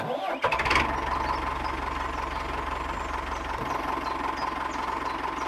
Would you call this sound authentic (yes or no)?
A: yes